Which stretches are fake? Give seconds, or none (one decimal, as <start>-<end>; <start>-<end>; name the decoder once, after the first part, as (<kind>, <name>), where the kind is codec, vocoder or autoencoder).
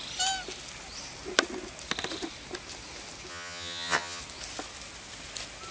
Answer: 3.3-4.2 (vocoder, HiFi-GAN)